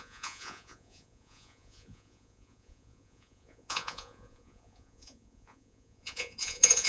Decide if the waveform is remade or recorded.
remade